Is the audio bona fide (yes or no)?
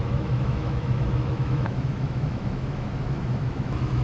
no